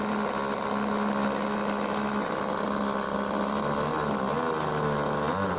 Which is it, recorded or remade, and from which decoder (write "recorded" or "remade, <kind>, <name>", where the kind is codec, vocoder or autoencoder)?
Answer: recorded